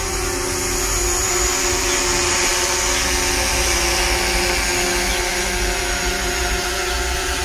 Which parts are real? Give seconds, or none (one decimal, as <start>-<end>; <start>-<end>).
0.0-7.4